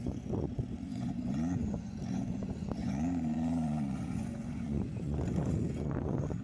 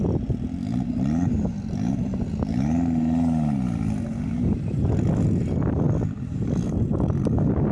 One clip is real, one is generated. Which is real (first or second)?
second